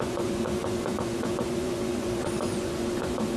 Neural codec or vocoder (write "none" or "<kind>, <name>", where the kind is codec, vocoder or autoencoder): vocoder, Vocos